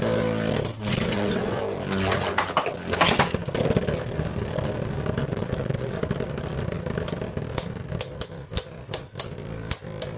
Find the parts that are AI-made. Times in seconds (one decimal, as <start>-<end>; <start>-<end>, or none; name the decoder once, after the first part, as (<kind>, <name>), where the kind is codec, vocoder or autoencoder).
0.7-1.6 (vocoder, WaveNeXt); 5.2-6.0